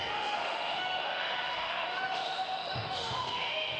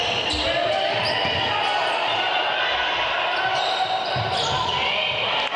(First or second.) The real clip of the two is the second